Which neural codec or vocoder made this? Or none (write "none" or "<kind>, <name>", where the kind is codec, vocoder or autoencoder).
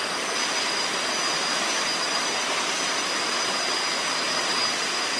none